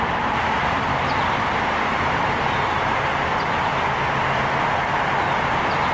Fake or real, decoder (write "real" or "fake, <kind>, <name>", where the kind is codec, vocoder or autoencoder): real